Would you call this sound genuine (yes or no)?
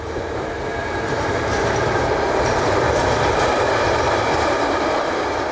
no